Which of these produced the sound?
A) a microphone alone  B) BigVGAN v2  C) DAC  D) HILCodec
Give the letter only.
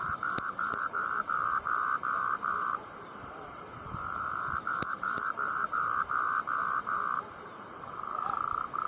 B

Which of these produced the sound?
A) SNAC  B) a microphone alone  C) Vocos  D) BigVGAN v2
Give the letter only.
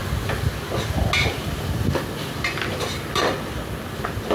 B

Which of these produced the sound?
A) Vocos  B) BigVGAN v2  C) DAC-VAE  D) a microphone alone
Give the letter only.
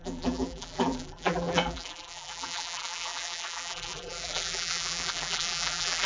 B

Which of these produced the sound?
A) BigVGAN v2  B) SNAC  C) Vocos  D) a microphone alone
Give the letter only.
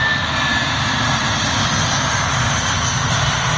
D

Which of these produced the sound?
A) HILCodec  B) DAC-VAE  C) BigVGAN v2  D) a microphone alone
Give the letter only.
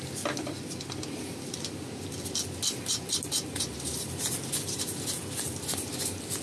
D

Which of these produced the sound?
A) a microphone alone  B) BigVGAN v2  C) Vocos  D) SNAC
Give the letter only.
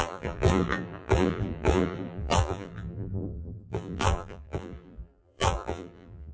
B